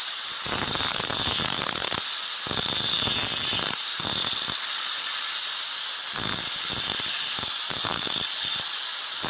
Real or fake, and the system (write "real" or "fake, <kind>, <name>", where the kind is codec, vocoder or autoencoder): real